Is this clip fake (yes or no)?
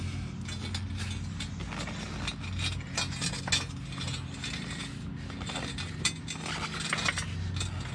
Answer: no